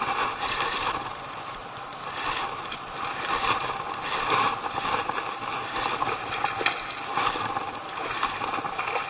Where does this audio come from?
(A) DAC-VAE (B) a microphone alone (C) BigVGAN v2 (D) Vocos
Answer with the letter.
B